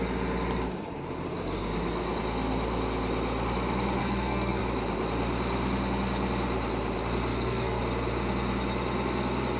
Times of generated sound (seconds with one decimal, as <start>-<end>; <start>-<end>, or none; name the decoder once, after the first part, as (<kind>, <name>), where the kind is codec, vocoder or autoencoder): 4.0-4.6 (codec, SNAC); 7.3-7.8

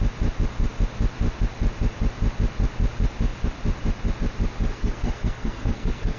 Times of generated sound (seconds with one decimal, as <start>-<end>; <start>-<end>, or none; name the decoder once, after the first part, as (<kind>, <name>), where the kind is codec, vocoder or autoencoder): 4.7-6.2 (codec, SNAC)

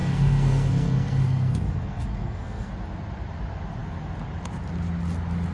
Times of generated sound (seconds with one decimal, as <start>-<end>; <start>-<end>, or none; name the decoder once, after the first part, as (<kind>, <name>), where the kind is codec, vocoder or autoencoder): 0.0-2.7 (codec, SNAC)

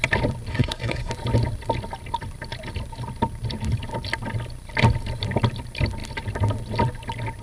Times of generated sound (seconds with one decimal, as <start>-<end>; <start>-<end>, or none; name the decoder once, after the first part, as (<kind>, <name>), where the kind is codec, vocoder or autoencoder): 0.5-1.1 (codec, SNAC)

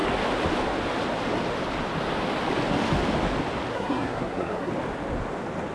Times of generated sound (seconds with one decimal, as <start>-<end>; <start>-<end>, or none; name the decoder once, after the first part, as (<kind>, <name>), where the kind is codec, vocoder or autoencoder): 3.7-4.7 (codec, SNAC)